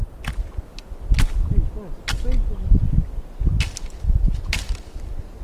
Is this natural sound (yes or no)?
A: yes